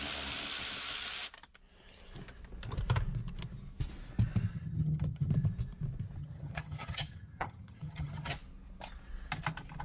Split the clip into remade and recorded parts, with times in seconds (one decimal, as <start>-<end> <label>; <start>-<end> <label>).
0.0-4.5 recorded; 4.5-5.3 remade; 5.3-6.2 recorded; 6.2-8.3 remade; 8.3-9.8 recorded